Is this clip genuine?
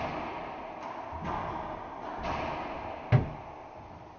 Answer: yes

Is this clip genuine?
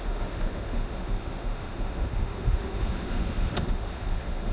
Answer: no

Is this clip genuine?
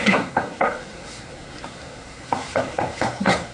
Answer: no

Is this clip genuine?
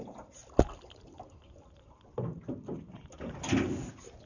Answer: yes